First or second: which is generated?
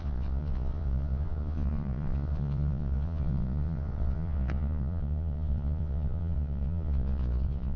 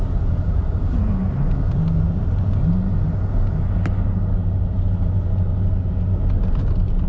first